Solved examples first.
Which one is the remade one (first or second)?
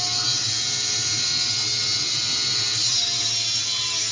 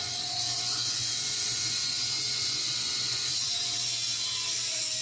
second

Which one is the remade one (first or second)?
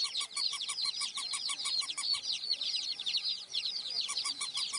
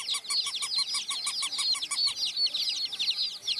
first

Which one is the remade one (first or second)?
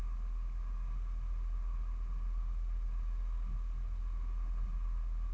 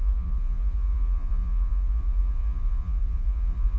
second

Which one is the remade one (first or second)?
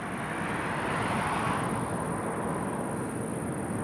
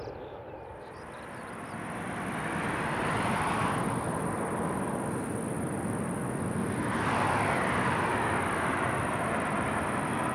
second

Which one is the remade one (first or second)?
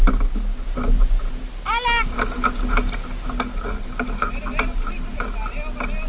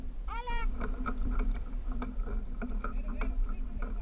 second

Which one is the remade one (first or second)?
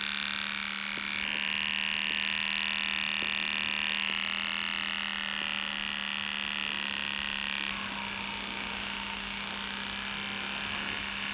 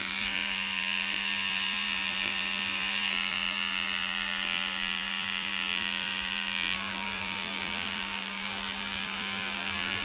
second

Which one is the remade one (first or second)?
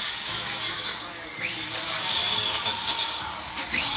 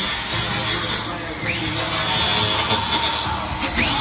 first